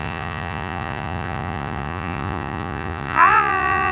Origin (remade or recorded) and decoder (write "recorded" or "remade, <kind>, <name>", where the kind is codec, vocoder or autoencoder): remade, vocoder, Vocos